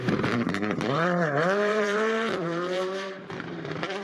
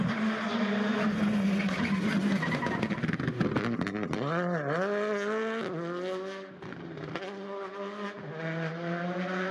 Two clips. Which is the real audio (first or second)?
second